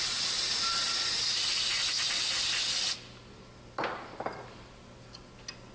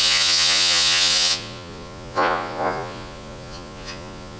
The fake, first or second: second